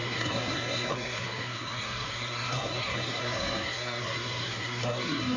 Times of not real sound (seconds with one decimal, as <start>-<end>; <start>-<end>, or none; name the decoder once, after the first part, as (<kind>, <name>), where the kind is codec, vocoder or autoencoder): 0.0-5.4 (codec, SNAC)